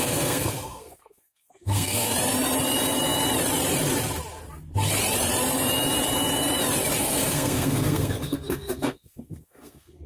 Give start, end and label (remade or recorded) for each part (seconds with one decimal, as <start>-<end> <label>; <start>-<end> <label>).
0.0-2.1 remade; 2.1-7.0 recorded; 7.0-10.1 remade